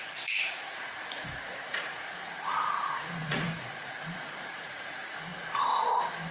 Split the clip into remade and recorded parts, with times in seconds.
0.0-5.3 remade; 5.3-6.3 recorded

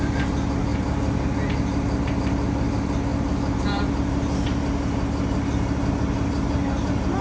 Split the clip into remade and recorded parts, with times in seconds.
0.0-7.2 recorded

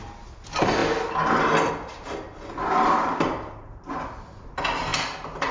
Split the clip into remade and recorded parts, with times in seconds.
0.0-5.5 recorded